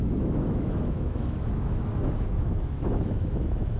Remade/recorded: remade